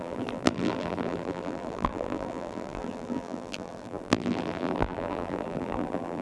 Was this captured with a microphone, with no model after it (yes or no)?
no